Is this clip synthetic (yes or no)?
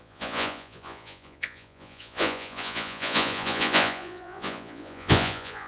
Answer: yes